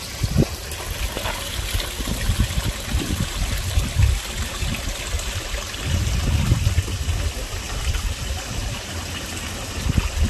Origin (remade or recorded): recorded